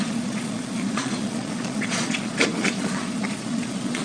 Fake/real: fake